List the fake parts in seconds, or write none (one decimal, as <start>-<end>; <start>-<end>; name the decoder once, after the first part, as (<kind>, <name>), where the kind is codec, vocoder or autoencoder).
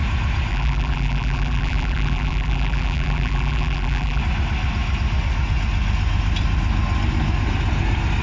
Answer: 0.5-4.2 (vocoder, BigVGAN v2)